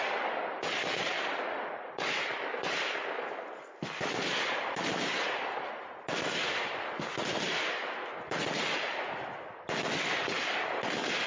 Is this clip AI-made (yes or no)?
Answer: no